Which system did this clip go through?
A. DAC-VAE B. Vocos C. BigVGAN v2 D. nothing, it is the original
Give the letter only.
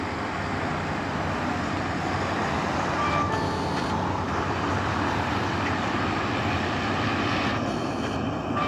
D